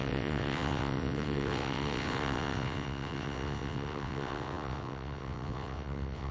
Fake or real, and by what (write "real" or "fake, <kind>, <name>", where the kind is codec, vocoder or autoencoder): fake, vocoder, WaveNeXt